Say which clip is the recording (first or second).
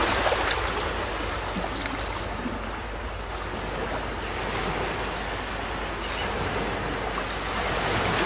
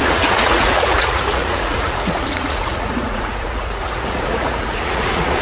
first